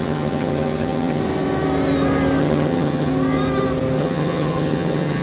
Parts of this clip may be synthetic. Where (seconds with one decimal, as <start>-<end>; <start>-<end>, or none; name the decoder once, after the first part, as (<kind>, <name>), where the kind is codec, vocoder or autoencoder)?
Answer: 0.0-1.2 (vocoder, HiFi-GAN); 2.4-3.1; 4.0-5.2